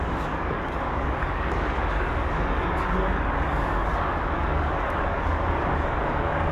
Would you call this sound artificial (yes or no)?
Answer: yes